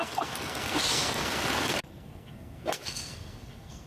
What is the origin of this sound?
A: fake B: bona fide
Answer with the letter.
A